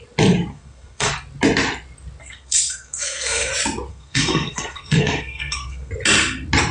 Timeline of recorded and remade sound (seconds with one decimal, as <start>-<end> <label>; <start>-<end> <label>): 0.0-0.5 recorded; 0.5-1.1 remade; 1.1-2.2 recorded; 2.2-3.5 remade; 3.5-3.9 recorded; 3.9-5.9 remade; 5.9-6.7 recorded